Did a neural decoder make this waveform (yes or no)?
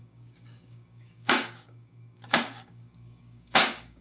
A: yes